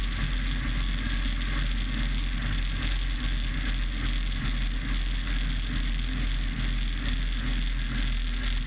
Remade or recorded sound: recorded